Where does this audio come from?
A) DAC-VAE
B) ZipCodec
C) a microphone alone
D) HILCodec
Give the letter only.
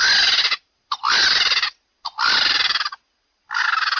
C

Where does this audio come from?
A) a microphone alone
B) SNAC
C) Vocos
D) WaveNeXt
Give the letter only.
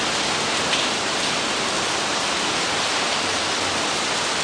A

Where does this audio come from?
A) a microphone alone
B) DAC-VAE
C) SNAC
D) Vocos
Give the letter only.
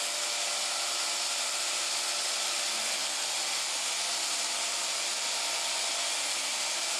A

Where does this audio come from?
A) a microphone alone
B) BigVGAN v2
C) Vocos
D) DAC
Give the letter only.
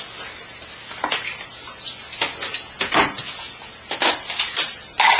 A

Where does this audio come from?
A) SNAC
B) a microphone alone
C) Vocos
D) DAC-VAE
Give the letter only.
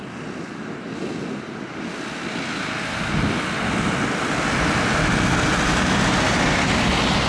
B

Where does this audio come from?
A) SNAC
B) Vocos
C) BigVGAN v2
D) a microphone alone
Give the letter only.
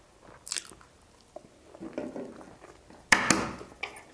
D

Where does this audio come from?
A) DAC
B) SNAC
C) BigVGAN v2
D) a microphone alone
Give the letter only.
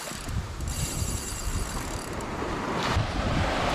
C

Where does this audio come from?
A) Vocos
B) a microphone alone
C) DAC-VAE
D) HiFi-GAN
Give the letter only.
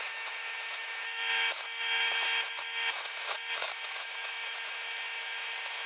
C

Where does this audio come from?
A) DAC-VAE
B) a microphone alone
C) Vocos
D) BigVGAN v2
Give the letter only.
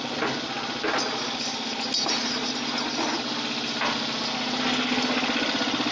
B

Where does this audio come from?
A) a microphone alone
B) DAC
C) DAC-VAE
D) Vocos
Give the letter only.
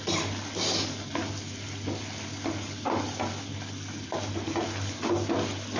A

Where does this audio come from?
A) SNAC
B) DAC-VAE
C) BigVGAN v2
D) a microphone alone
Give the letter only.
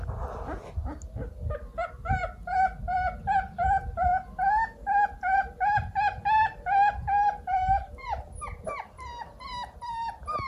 D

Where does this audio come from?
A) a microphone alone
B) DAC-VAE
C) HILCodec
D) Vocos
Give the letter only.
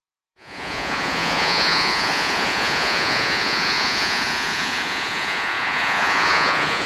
D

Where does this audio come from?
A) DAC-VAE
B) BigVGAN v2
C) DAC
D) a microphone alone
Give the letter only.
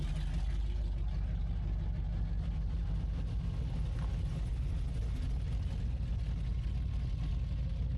D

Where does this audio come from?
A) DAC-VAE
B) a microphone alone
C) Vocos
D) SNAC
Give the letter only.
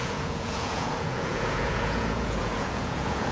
C